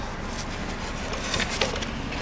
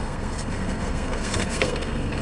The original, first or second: first